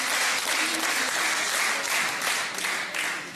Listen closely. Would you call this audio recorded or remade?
recorded